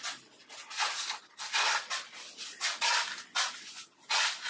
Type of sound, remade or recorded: recorded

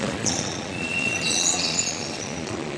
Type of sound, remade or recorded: remade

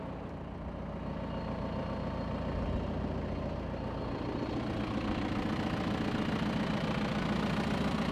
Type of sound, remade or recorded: recorded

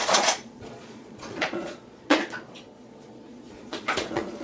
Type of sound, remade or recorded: remade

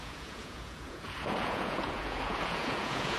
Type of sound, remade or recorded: remade